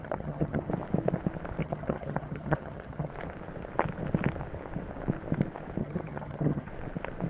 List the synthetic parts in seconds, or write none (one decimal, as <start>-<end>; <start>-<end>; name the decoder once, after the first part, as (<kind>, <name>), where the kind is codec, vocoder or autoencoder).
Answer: 0.0-0.7 (vocoder, HiFi-GAN); 1.6-3.1; 5.8-6.7